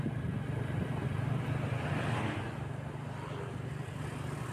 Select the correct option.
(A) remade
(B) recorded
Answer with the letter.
B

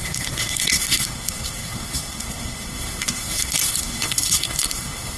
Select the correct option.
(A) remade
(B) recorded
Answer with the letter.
A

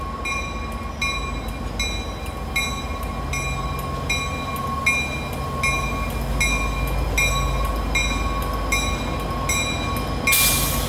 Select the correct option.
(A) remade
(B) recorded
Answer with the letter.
B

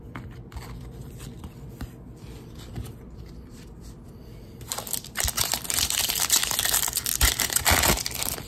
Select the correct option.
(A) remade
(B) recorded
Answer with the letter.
A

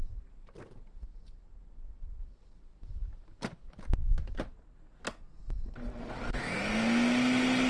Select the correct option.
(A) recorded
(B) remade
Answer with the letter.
A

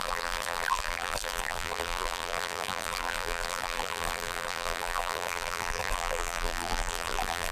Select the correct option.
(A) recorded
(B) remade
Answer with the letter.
B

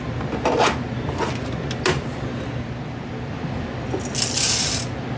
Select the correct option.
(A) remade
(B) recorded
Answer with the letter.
B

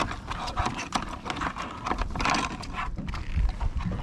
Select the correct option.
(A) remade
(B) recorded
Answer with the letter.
B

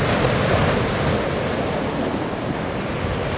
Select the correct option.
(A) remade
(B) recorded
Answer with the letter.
B